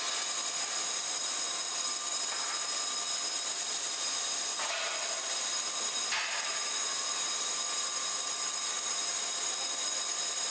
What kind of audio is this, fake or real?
real